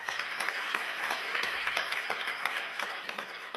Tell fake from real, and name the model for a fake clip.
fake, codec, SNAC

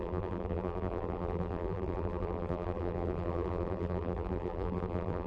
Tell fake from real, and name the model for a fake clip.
fake, vocoder, BigVGAN v2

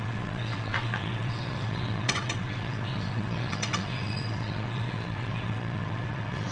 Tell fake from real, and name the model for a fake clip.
fake, vocoder, WaveNeXt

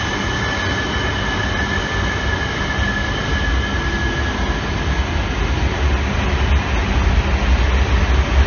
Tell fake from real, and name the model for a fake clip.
real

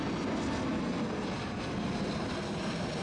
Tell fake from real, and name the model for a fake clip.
real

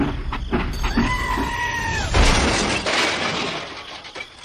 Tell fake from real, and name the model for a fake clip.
real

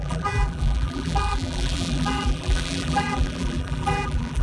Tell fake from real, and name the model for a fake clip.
fake, vocoder, BigVGAN v2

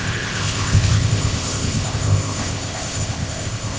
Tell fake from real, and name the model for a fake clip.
fake, codec, ZipCodec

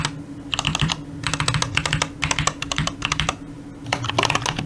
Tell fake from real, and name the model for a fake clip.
real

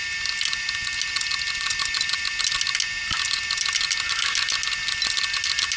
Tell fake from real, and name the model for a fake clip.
real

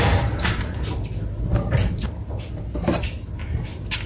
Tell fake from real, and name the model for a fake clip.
real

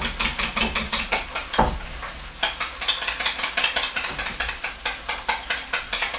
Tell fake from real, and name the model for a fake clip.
real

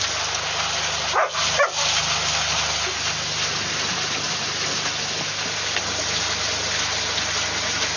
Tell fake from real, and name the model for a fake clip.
real